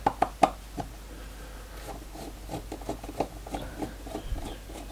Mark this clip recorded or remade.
recorded